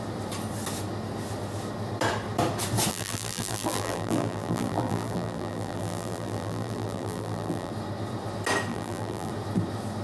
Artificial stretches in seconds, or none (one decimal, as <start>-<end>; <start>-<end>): 2.9-7.7; 8.7-9.3